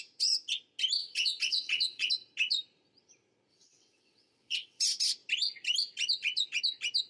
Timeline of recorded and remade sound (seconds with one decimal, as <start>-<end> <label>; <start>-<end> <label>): 0.0-1.0 recorded; 1.0-2.1 remade; 2.1-3.5 recorded; 3.5-4.8 remade; 4.8-7.1 recorded